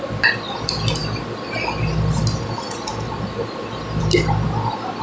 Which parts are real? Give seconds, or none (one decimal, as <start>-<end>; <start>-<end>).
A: 0.0-5.0